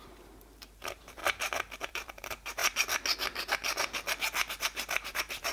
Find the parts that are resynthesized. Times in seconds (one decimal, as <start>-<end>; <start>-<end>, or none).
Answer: 0.0-1.2; 1.9-2.6; 4.5-5.5